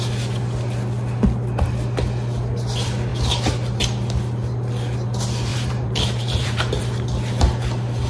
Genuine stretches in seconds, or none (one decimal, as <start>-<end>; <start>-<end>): 0.0-5.5; 6.8-8.1